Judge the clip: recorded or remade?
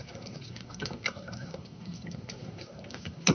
remade